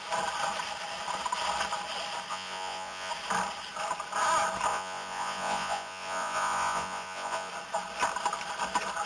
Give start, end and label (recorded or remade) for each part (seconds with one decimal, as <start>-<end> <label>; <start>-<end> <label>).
0.0-2.3 recorded; 2.3-3.1 remade; 3.1-4.7 recorded; 4.7-7.5 remade; 7.5-9.1 recorded